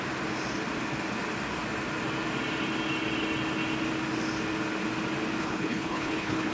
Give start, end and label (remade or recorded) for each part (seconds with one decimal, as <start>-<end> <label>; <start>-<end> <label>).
0.0-5.4 recorded; 5.4-6.5 remade